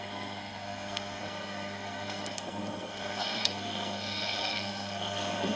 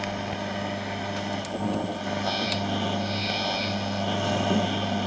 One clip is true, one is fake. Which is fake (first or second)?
first